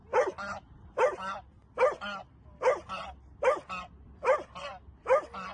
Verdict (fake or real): real